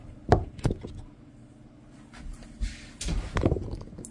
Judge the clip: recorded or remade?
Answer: recorded